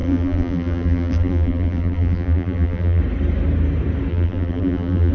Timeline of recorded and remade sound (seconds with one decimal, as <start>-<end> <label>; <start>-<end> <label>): 0.0-3.0 remade; 3.0-4.1 recorded; 4.1-5.1 remade